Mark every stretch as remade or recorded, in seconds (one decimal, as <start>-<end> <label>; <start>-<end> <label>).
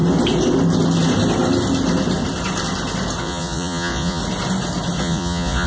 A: 0.0-3.2 recorded; 3.2-4.2 remade; 4.2-5.0 recorded; 5.0-5.7 remade